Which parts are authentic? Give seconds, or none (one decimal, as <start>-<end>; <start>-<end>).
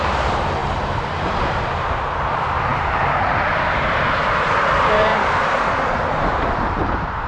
none